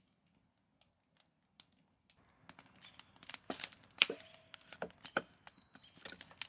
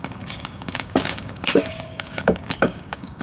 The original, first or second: first